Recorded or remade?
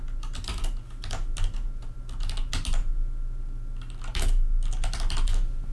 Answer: recorded